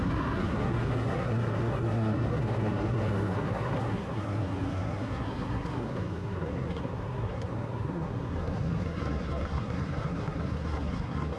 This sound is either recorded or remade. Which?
remade